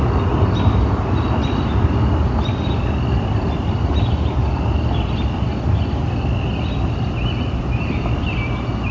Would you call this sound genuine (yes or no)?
yes